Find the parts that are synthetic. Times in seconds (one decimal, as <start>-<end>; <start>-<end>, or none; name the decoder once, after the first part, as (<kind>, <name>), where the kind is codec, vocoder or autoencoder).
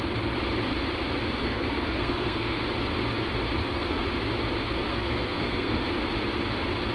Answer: 1.4-2.6 (codec, SNAC); 3.6-4.1; 4.9-5.9